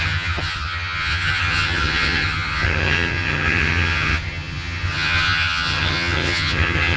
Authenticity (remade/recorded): remade